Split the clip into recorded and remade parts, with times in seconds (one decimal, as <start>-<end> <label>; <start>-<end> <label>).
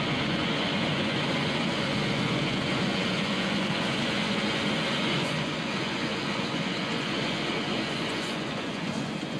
0.0-9.4 remade